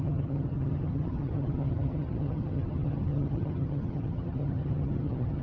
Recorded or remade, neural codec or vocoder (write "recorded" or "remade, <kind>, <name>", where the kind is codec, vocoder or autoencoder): remade, vocoder, HiFi-GAN